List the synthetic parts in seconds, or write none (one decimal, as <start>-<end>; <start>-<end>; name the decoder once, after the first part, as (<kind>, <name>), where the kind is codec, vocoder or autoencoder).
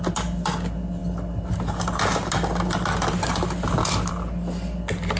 none